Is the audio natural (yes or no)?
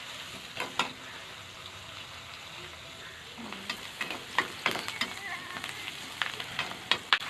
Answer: yes